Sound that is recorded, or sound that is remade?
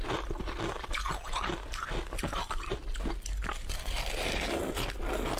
recorded